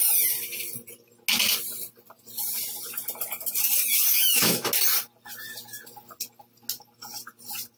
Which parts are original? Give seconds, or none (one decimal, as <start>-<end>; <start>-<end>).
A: 0.0-4.1; 4.7-7.8